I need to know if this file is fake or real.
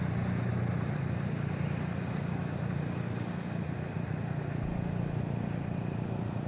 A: real